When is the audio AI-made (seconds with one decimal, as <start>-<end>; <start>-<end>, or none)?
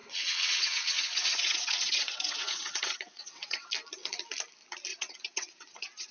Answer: 0.0-3.7; 4.9-6.1